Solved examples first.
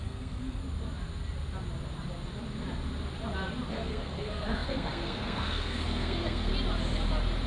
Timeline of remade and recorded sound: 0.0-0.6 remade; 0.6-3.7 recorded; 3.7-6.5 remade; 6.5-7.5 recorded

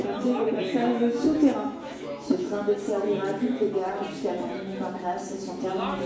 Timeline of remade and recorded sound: 0.0-2.5 remade; 2.5-6.1 recorded

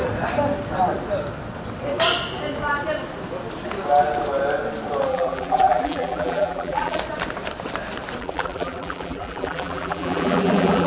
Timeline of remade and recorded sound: 0.0-5.1 recorded; 5.1-7.0 remade; 7.0-8.2 recorded; 8.2-10.9 remade

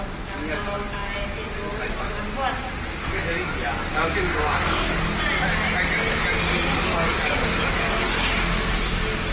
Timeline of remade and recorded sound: 0.0-9.3 recorded

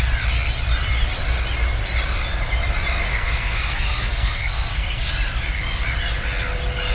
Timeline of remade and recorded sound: 0.0-3.1 recorded; 3.1-5.1 remade; 5.1-6.9 recorded

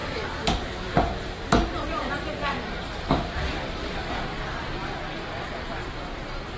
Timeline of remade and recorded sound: 0.0-6.6 remade